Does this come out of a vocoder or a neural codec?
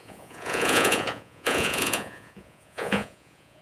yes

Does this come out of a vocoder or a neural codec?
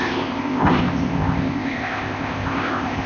yes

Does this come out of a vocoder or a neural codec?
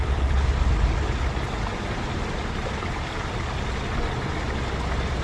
no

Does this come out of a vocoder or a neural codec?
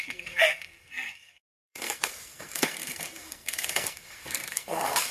yes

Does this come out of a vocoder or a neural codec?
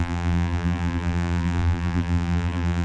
yes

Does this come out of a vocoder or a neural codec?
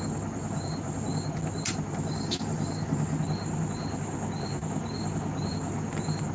no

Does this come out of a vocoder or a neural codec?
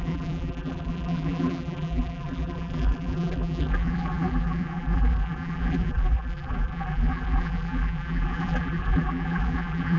yes